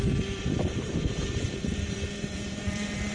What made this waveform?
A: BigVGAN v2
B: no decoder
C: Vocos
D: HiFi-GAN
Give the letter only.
A